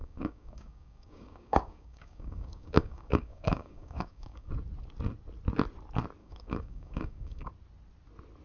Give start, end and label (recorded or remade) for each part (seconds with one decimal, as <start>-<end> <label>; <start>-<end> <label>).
0.0-4.5 remade; 4.5-6.2 recorded; 6.2-7.5 remade; 7.5-8.4 recorded